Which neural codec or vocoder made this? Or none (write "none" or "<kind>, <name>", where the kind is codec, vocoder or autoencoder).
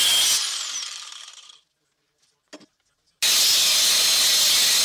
none